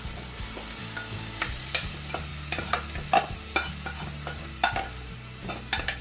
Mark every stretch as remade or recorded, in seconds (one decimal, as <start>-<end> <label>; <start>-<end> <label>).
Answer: 0.0-0.8 recorded; 0.8-1.4 remade; 1.4-6.0 recorded